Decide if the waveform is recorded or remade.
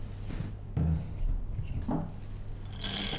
recorded